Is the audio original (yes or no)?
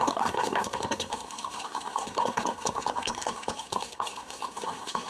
no